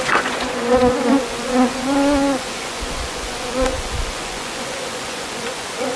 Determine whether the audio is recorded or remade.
remade